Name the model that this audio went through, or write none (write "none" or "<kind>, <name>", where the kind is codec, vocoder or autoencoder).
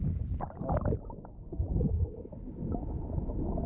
none